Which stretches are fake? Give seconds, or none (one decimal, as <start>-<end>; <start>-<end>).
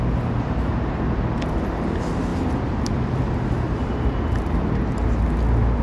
2.3-5.8